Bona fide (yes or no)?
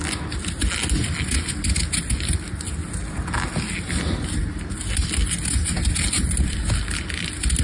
yes